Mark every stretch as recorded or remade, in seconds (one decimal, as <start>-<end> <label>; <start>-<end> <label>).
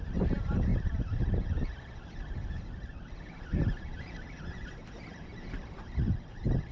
0.0-0.7 remade; 0.7-1.2 recorded; 1.2-6.7 remade